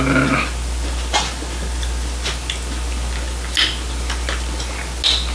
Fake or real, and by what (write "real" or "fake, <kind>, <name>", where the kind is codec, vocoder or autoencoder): real